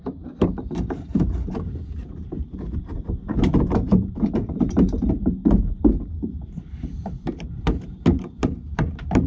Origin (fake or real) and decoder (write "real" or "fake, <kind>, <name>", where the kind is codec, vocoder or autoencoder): fake, vocoder, BigVGAN v2